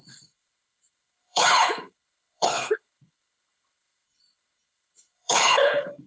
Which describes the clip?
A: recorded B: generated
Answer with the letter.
B